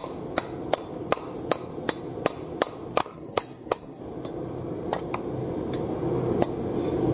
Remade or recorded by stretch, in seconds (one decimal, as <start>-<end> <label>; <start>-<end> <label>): 0.0-3.0 recorded; 3.0-4.0 remade; 4.0-7.1 recorded